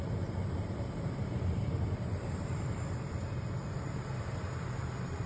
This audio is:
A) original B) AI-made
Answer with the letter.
B